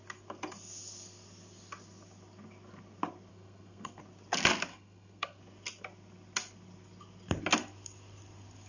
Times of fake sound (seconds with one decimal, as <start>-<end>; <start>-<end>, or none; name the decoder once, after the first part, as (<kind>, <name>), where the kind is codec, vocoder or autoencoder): 3.3-4.0 (codec, SNAC); 4.7-5.4